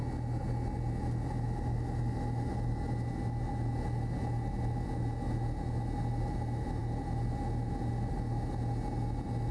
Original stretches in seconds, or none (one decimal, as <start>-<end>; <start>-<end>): 0.0-9.5